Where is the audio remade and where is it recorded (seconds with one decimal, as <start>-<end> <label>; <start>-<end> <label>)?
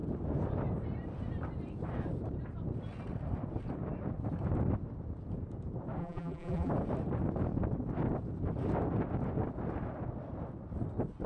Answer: 0.0-6.0 recorded; 6.0-6.7 remade; 6.7-11.3 recorded